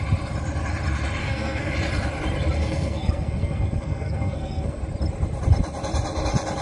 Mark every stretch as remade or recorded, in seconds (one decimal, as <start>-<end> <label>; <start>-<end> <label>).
0.0-1.2 recorded; 1.2-1.7 remade; 1.7-2.6 recorded; 2.6-4.8 remade; 4.8-6.6 recorded